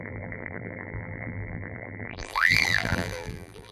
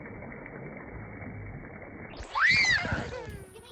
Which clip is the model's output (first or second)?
first